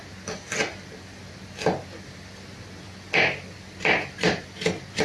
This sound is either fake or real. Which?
real